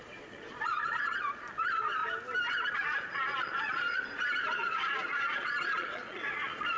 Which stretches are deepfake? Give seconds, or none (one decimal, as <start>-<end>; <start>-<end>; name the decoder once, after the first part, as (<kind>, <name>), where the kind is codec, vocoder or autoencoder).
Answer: 0.0-2.0 (vocoder, Vocos); 2.7-6.8